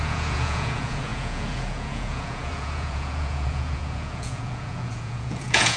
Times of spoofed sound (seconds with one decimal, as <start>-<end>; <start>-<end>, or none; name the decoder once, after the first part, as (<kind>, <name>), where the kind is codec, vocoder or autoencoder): 0.0-5.8 (vocoder, Vocos)